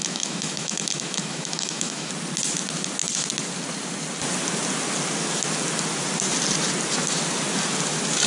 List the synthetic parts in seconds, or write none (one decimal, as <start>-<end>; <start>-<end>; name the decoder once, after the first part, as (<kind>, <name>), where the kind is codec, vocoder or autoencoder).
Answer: 0.0-2.1 (autoencoder, DAC-VAE)